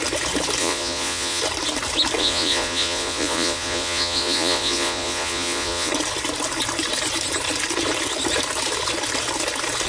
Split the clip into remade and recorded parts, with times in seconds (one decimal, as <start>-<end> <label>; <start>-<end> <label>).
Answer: 0.0-0.6 recorded; 0.6-1.4 remade; 1.4-2.2 recorded; 2.2-5.9 remade; 5.9-9.9 recorded